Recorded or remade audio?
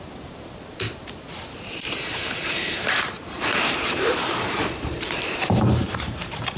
remade